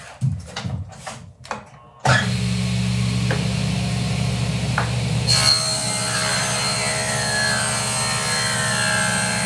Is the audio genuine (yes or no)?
yes